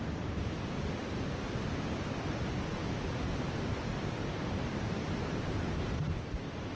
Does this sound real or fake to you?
real